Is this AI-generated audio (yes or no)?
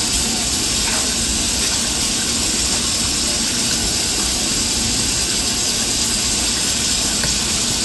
no